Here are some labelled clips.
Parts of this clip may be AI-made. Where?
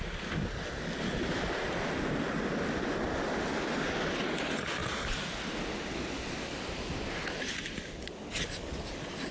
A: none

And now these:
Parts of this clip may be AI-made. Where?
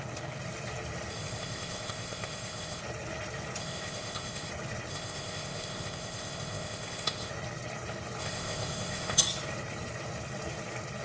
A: 1.1-2.8; 3.6-4.5; 4.9-7.3; 8.2-9.2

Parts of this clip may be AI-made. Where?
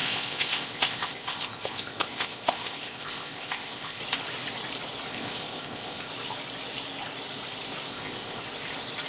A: 0.0-4.0; 5.1-6.1; 7.9-8.4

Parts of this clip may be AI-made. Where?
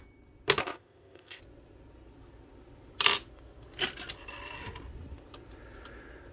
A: 0.6-1.4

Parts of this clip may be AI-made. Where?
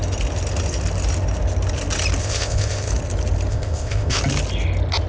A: 2.2-2.9; 3.5-4.2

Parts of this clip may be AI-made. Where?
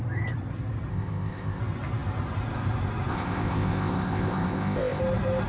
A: 0.9-1.6; 3.1-5.0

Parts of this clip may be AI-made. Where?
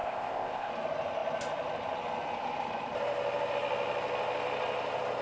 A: 0.0-0.7